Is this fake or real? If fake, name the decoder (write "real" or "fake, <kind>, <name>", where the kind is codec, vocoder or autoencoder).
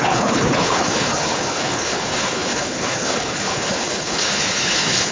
fake, codec, HILCodec